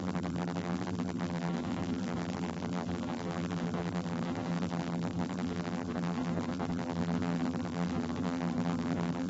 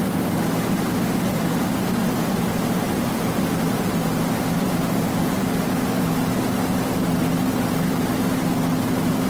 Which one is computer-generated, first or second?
first